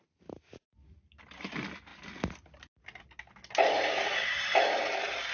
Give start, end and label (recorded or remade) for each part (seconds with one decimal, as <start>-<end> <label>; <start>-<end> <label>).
0.0-5.3 recorded